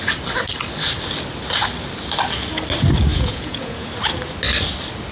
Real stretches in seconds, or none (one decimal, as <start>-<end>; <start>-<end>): 0.0-3.1; 3.9-5.1